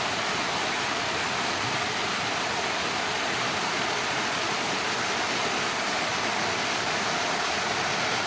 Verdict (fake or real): real